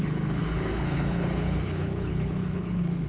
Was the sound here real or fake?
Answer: fake